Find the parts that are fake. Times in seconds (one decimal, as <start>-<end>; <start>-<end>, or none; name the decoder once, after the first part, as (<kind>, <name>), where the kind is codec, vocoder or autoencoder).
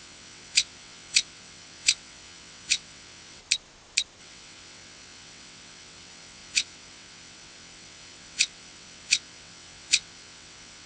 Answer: 0.0-3.4 (vocoder, WaveNeXt); 4.2-10.9